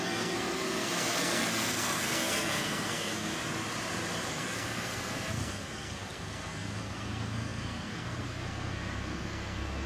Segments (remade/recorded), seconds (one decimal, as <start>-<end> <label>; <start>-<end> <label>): 0.0-3.3 remade; 3.3-4.3 recorded; 4.3-9.9 remade